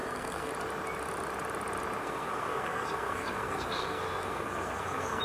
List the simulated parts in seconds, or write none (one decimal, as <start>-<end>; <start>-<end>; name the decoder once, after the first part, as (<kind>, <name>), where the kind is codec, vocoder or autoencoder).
0.0-0.5 (codec, SNAC); 2.0-5.2